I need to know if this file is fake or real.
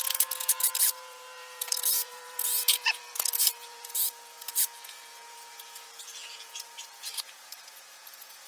fake